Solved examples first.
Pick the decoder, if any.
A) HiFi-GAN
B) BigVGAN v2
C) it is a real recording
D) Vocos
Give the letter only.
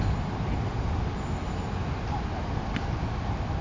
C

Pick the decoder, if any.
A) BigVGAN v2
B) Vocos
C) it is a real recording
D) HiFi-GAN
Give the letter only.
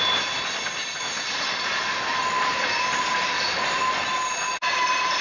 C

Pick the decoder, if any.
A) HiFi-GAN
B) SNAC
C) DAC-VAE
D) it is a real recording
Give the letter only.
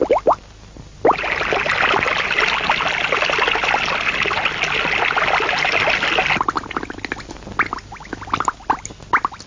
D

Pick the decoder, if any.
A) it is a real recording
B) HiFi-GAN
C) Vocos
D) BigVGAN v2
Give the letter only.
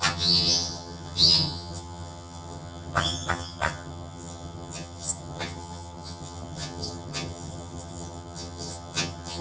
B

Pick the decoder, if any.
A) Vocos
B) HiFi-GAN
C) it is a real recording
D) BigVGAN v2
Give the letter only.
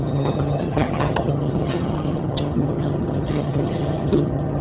B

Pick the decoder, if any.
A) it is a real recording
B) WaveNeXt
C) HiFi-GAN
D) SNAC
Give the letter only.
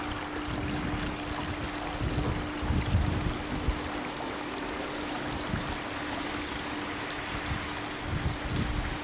A